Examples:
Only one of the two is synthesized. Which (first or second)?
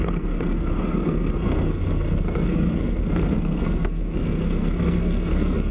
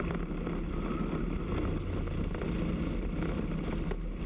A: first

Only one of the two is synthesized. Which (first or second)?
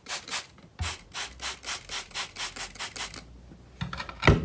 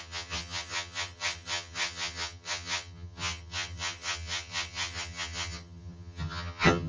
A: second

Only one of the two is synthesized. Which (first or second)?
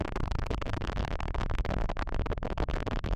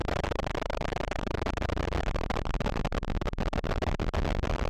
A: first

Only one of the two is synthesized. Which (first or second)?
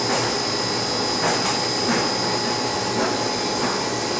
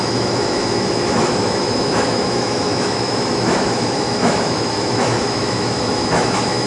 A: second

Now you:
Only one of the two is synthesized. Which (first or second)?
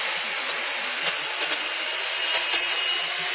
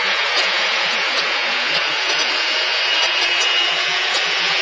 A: second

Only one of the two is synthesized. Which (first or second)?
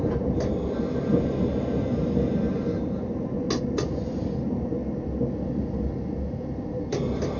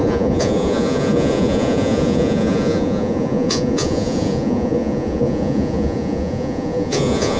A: second